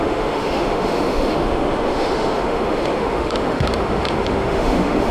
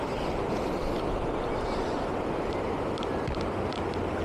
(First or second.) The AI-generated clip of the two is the first